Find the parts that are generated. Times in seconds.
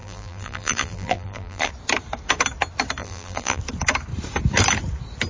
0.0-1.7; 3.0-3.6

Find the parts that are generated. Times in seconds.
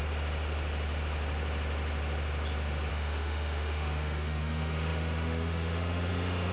2.9-6.5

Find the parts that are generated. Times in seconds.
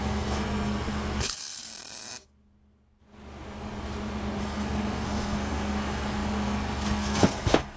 0.0-1.7; 4.4-7.8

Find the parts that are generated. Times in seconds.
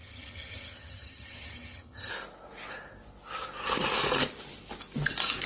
0.0-2.1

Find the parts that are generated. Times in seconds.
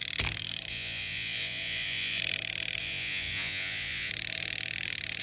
0.7-2.2; 2.8-4.1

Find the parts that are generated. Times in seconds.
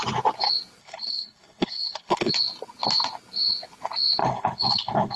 0.8-2.3; 4.2-5.2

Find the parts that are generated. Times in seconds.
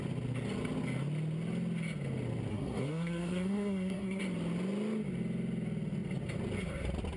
2.5-4.2